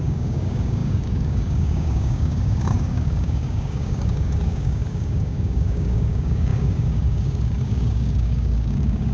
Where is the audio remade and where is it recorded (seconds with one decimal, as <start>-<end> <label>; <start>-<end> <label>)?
0.0-9.1 remade